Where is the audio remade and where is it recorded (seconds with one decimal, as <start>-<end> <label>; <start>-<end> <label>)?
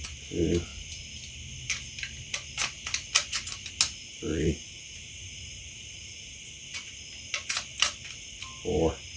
0.0-4.3 recorded; 4.3-7.1 remade; 7.1-9.2 recorded